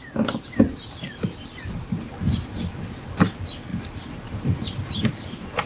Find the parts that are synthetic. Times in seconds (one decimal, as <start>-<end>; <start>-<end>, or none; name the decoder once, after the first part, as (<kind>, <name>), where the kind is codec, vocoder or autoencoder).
none